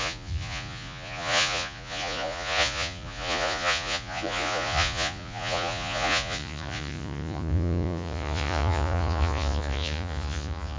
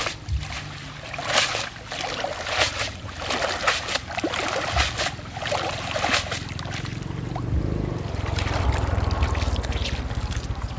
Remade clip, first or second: first